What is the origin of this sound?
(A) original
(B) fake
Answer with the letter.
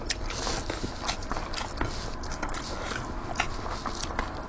A